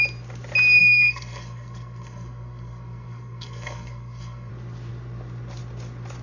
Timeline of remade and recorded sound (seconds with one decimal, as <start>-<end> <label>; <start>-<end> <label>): 0.0-0.8 recorded; 0.8-4.5 remade; 4.5-6.2 recorded